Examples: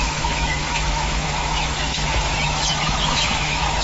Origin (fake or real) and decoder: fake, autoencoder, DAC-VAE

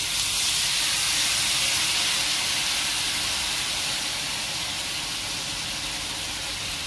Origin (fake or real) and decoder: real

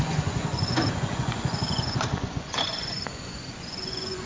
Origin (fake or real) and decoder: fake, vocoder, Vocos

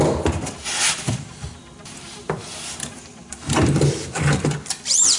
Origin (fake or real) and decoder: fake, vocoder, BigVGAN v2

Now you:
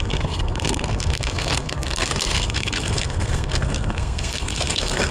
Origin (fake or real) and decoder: fake, codec, SNAC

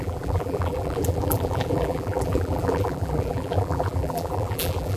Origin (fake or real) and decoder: fake, vocoder, BigVGAN v2